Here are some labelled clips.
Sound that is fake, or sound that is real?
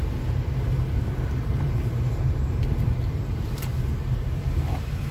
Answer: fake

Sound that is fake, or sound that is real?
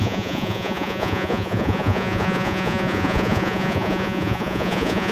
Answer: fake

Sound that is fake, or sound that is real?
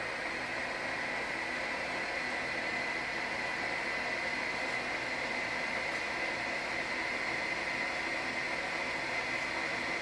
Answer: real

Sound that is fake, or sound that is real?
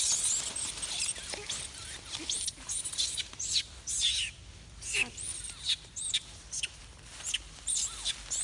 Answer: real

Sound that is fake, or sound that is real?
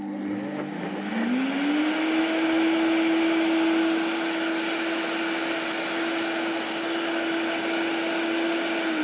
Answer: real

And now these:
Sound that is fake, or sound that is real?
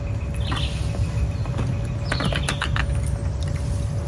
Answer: real